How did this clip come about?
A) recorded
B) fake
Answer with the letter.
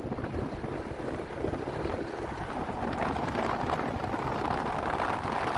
A